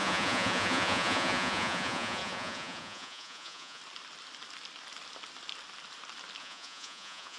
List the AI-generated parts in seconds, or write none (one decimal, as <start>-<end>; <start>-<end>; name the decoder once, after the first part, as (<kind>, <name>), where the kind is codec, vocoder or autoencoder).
0.0-3.8 (vocoder, Vocos); 6.4-7.4